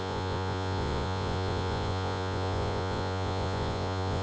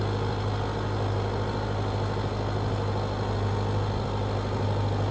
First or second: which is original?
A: second